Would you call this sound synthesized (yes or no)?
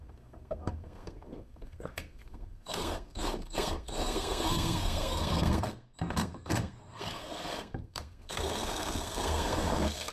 yes